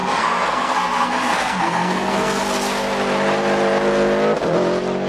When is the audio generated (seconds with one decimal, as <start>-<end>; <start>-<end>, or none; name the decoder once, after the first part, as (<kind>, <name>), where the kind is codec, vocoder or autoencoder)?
0.0-2.4 (codec, SNAC)